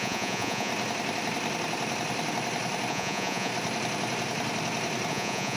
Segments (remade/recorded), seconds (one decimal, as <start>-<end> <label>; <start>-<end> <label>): 0.0-0.7 remade; 0.7-2.9 recorded; 2.9-3.5 remade; 3.5-5.1 recorded; 5.1-5.6 remade